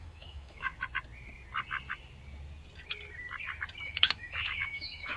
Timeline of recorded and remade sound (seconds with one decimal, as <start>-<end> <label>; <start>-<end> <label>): 0.0-0.7 remade; 0.7-3.8 recorded; 3.8-5.2 remade